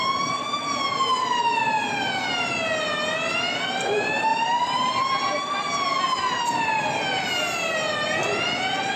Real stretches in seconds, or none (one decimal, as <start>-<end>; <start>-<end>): 0.6-4.3; 5.6-9.0